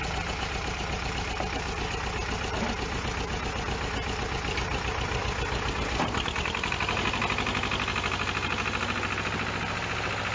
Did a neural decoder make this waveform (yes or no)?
no